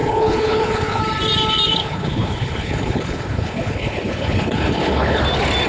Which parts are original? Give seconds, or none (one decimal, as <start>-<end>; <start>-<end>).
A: 1.0-1.8; 5.2-5.7